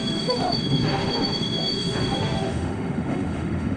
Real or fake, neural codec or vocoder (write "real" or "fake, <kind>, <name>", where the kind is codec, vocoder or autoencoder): fake, autoencoder, DAC-VAE